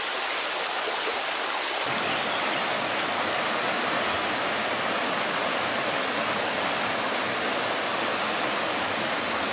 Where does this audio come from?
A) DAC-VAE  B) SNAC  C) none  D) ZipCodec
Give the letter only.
C